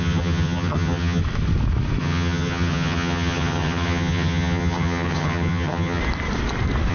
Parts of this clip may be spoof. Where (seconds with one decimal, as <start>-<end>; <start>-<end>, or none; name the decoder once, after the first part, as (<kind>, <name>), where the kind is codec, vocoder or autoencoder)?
0.0-1.2 (vocoder, HiFi-GAN); 2.0-6.0